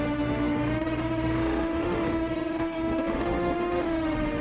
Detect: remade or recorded remade